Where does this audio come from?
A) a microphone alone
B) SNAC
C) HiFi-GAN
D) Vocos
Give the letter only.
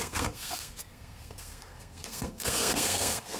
B